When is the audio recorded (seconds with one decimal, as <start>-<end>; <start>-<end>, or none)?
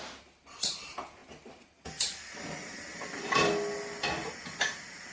0.0-5.1